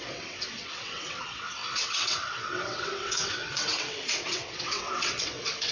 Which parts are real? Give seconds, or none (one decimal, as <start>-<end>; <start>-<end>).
none